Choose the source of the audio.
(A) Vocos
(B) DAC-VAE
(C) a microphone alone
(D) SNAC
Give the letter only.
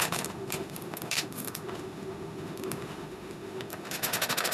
B